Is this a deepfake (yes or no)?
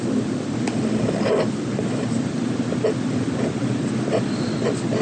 no